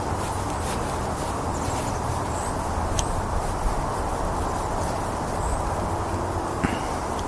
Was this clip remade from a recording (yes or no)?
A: no